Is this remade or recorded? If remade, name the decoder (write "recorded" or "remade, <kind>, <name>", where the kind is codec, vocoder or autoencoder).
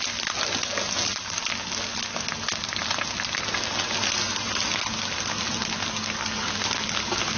recorded